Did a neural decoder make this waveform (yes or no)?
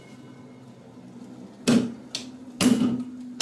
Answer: no